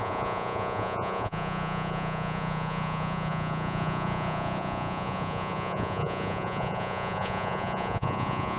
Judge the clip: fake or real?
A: fake